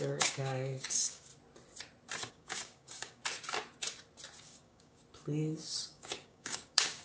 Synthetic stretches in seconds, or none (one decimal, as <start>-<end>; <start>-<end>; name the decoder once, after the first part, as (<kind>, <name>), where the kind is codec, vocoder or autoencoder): 0.0-1.3 (codec, DAC); 2.3-3.2; 4.4-5.0; 5.9-7.0